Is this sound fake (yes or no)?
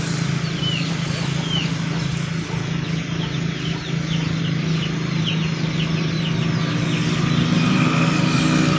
no